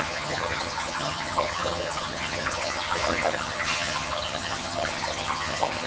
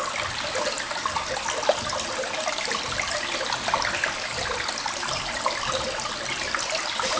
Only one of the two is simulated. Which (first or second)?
first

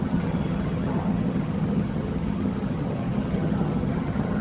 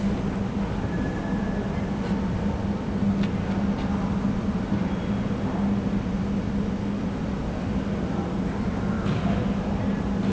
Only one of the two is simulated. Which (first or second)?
first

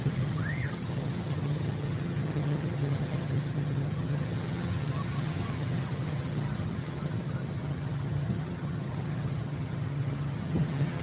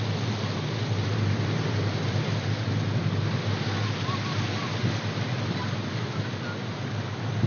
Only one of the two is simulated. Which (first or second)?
first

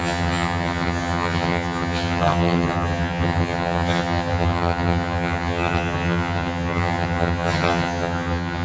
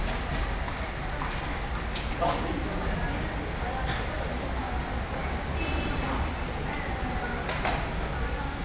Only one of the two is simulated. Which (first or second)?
first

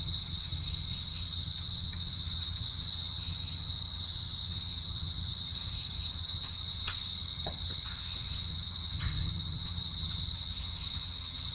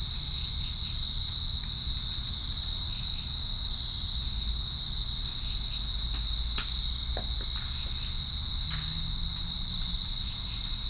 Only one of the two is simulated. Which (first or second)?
first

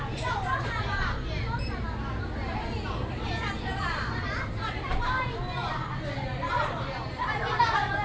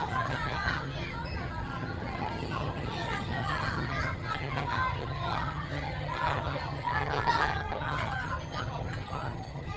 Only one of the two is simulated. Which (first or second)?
second